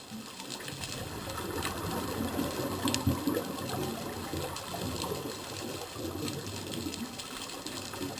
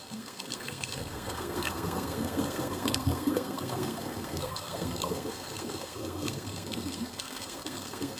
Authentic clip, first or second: first